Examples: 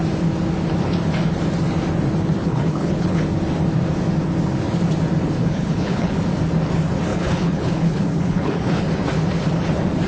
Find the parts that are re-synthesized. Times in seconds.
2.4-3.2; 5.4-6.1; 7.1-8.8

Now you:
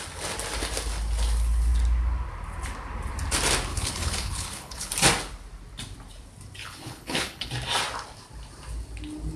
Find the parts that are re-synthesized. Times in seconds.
3.7-4.9; 6.6-7.5

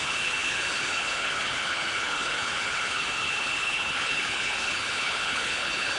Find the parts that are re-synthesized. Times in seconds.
0.0-6.0

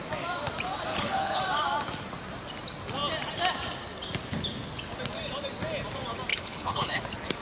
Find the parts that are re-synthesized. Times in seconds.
0.9-1.4; 6.3-7.0

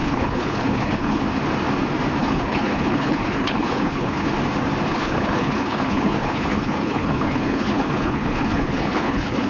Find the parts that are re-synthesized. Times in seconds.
0.0-1.2; 2.2-4.3; 4.9-9.5

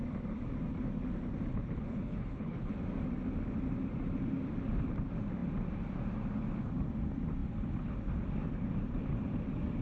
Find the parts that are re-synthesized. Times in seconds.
1.5-2.7

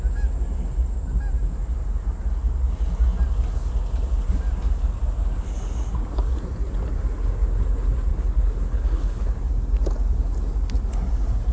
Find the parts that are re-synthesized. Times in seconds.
8.1-9.4